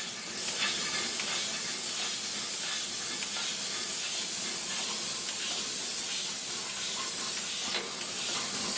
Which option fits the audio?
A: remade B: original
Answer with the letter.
B